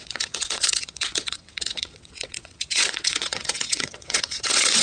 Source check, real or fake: fake